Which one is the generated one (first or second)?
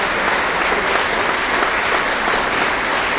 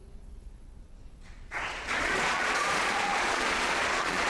second